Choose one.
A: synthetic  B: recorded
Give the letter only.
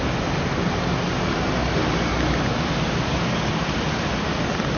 B